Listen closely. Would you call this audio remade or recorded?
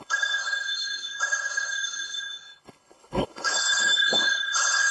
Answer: remade